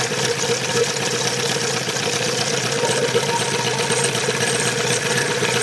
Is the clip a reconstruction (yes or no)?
no